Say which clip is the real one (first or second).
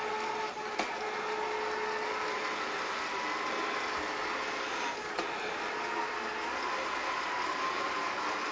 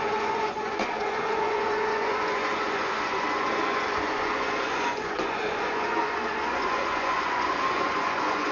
first